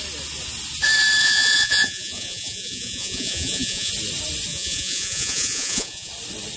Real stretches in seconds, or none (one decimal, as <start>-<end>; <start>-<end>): 0.0-1.2; 3.9-4.5; 6.1-6.6